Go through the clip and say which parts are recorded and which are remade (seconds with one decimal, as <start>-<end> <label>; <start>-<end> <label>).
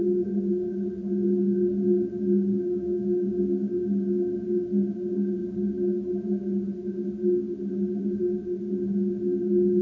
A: 0.0-2.5 recorded; 2.5-3.3 remade; 3.3-9.8 recorded